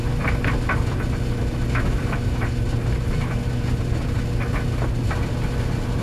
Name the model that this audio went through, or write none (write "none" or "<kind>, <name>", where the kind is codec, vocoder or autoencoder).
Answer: none